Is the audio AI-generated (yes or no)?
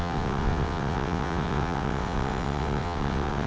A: yes